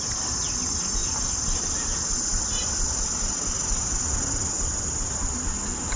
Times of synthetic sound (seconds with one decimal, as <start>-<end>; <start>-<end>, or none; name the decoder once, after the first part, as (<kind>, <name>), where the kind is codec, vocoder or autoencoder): none